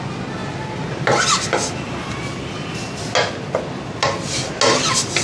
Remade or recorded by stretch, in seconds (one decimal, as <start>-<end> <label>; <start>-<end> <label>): 0.0-5.2 recorded